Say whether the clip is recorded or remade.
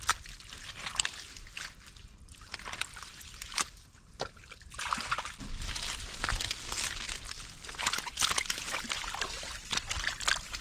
recorded